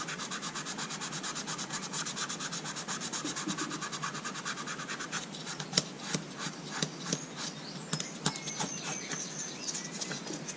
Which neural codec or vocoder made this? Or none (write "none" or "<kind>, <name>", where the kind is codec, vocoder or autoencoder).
none